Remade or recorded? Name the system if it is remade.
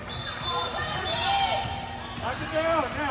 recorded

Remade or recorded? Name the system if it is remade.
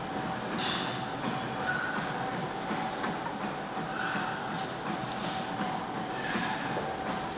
recorded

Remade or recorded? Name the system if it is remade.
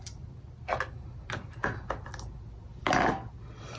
recorded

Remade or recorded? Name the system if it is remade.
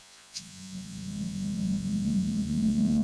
remade, vocoder, Vocos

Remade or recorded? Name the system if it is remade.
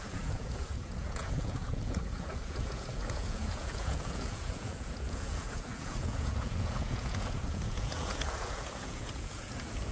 remade, vocoder, Vocos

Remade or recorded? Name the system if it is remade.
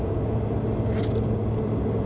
recorded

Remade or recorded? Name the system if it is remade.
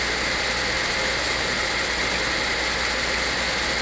recorded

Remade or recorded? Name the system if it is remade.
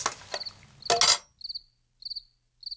recorded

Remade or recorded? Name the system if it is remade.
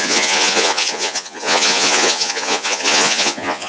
remade, vocoder, Vocos